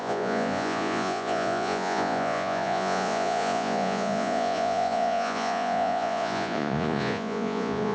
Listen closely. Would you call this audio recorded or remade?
remade